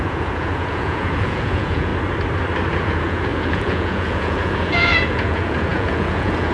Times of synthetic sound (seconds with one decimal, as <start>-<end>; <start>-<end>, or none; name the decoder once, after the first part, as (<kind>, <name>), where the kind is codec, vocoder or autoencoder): 0.0-1.9 (vocoder, Vocos); 2.8-6.5